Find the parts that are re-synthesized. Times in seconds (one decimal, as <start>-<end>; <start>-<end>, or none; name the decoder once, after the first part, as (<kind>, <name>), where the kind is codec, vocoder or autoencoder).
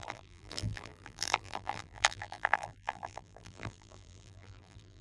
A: 0.0-5.0 (vocoder, BigVGAN v2)